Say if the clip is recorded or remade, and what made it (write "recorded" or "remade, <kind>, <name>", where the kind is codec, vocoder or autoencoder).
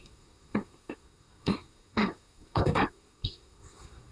remade, codec, SNAC